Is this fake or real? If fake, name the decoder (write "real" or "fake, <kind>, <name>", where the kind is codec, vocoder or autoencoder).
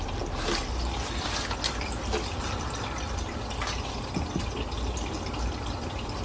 real